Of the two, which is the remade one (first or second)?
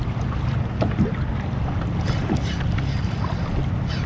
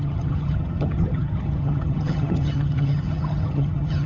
second